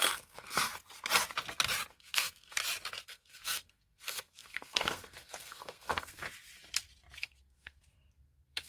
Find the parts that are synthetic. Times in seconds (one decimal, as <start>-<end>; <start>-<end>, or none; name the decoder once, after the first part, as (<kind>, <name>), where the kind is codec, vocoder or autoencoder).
0.0-0.7 (codec, SNAC); 1.9-2.6; 3.1-6.2; 7.2-8.7

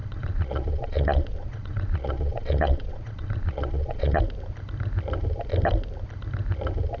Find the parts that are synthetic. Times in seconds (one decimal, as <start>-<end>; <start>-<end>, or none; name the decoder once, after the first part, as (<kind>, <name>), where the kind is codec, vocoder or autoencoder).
0.0-4.2 (vocoder, Vocos)

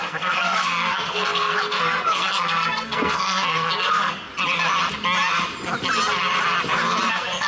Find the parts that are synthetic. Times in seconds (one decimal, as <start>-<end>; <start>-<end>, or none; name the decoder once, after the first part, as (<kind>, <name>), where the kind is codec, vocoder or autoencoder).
0.0-4.3 (codec, SNAC); 7.1-7.5

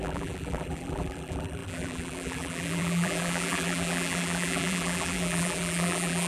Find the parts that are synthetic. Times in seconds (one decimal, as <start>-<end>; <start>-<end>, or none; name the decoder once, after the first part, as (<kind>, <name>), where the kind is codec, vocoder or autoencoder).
0.0-6.3 (vocoder, BigVGAN v2)

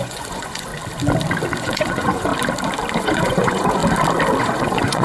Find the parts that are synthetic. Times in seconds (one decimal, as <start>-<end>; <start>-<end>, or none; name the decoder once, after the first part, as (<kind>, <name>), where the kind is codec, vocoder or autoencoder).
0.0-0.7 (vocoder, Vocos); 1.6-2.3; 3.0-3.8; 4.4-5.0

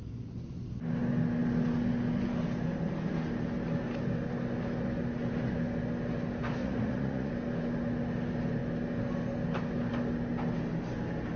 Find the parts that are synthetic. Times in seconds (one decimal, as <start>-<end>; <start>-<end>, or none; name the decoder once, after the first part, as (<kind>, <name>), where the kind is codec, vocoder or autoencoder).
6.6-7.3 (vocoder, Vocos)

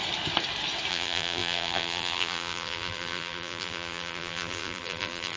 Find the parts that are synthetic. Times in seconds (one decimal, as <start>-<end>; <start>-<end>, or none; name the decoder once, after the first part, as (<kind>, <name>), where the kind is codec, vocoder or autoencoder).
0.9-5.4 (vocoder, BigVGAN v2)

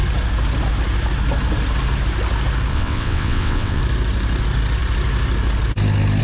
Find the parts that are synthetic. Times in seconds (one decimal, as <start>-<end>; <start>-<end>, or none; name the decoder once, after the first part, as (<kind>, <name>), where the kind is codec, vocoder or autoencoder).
2.7-3.8 (vocoder, WaveNeXt)